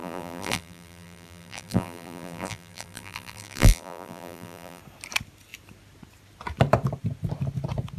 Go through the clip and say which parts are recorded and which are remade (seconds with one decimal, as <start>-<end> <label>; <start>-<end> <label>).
0.0-4.8 remade; 4.8-8.0 recorded